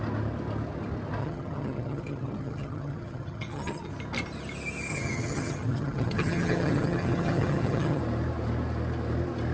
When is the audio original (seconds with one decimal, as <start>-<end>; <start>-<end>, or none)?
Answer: 0.0-1.2; 3.9-4.9; 8.0-9.5